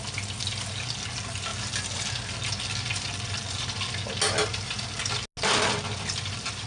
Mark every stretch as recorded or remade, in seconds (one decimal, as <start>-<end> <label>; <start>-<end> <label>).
0.0-6.7 recorded